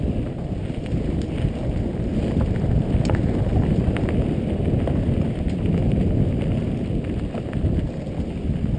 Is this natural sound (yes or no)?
yes